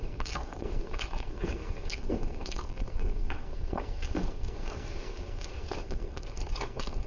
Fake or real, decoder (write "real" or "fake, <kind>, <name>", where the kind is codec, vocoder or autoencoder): fake, codec, SNAC